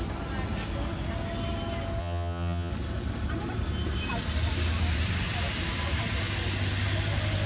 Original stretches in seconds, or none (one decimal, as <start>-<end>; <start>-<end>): 0.0-2.0; 2.7-7.5